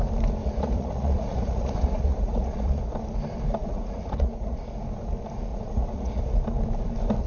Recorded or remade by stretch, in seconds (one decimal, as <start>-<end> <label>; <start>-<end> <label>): 0.0-0.4 recorded; 0.4-2.8 remade; 2.8-3.6 recorded; 3.6-4.6 remade; 4.6-5.5 recorded; 5.5-6.2 remade; 6.2-7.3 recorded